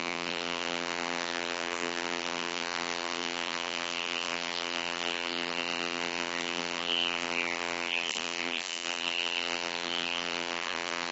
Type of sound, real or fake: fake